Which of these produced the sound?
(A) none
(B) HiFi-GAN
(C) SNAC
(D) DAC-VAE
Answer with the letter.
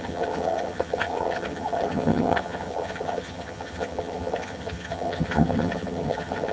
B